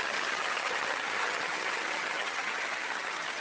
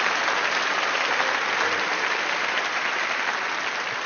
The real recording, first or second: second